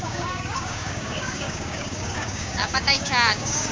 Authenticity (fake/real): fake